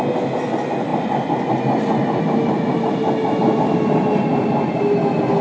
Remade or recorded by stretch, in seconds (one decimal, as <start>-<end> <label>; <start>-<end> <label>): 0.0-5.4 recorded